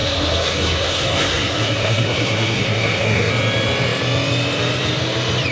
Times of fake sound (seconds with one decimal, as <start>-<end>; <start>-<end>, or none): 0.0-3.3